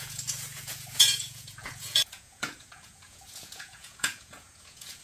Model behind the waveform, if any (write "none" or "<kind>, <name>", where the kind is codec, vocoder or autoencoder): vocoder, Vocos